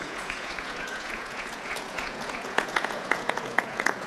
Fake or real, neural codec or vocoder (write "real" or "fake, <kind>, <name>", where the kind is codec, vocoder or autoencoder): fake, vocoder, Vocos